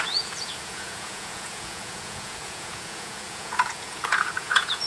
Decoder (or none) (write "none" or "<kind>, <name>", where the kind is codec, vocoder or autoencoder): vocoder, Vocos